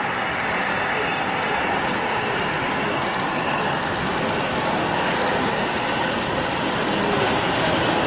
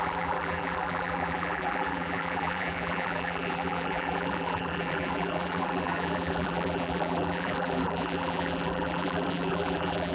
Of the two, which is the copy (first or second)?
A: second